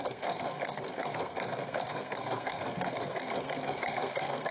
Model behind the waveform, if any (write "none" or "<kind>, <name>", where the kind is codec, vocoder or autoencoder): codec, SNAC